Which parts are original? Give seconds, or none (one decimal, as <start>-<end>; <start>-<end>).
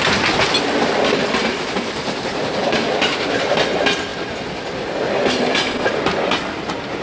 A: 0.0-7.0